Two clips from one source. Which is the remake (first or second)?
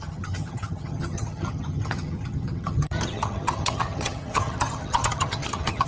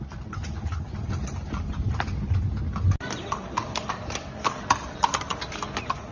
first